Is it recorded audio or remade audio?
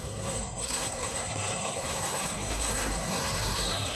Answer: remade